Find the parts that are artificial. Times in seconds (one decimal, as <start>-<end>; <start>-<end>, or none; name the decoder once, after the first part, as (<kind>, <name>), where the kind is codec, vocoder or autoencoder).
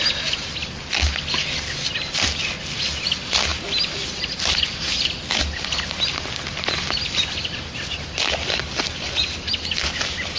none